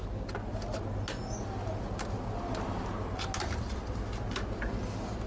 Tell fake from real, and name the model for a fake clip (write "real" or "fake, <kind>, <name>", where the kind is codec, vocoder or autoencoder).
real